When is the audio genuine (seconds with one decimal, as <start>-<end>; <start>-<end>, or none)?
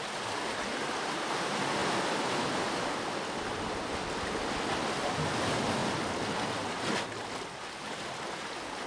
0.0-8.9